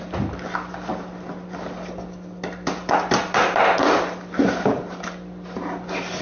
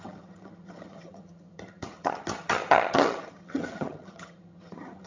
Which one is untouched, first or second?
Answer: first